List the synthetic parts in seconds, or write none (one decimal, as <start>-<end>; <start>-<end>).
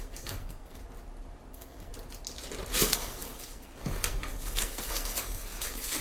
0.0-0.8; 1.5-1.9; 2.7-6.0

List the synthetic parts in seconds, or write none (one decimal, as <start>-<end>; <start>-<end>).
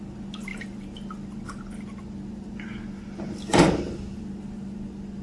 none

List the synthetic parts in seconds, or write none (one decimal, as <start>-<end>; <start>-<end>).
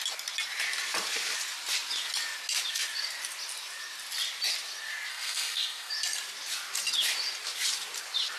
5.1-5.9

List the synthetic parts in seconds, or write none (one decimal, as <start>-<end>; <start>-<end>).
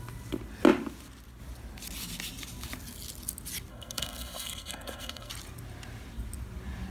3.7-5.3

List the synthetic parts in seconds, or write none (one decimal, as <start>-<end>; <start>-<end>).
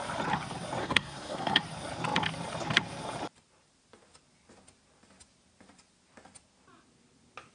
0.8-1.6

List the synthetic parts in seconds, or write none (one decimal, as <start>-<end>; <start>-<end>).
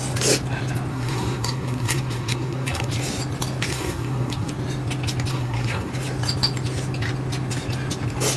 0.9-2.9; 3.7-4.5; 5.3-5.9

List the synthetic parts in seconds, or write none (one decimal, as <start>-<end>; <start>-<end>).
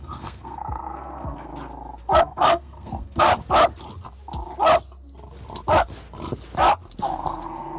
0.0-1.5; 2.2-3.3; 7.0-7.8